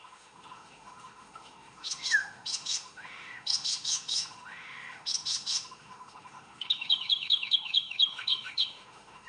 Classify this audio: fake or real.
fake